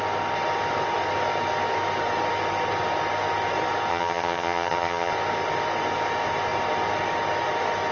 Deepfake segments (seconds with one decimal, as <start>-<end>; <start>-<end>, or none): 3.9-5.1